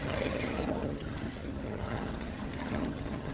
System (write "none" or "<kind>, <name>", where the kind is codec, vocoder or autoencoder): vocoder, HiFi-GAN